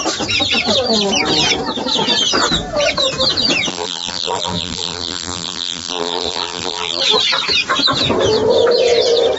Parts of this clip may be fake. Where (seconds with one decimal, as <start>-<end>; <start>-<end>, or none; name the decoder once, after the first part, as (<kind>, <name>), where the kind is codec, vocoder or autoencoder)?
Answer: 3.7-7.0 (vocoder, BigVGAN v2)